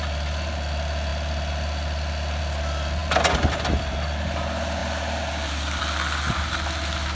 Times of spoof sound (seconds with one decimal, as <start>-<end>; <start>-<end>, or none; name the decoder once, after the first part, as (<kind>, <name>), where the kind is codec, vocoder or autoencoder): none